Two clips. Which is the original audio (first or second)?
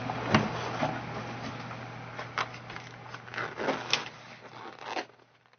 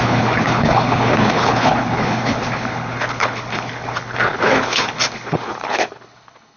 first